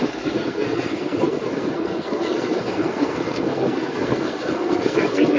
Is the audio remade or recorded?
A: remade